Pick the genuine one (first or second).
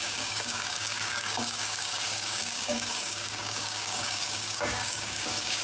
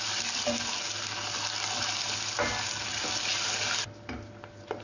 second